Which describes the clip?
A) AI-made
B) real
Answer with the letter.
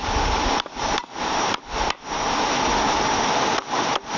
B